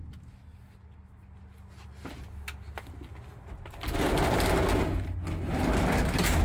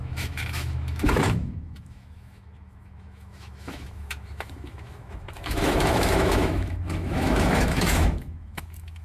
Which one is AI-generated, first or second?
second